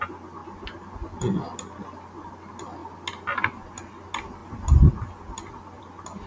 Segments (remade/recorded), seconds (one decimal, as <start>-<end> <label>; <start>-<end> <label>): 0.0-0.4 recorded; 0.4-0.9 remade; 0.9-6.3 recorded